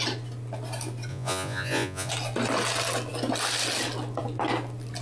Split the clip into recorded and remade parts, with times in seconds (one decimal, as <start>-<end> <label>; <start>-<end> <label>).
0.0-1.1 recorded; 1.1-2.1 remade; 2.1-5.0 recorded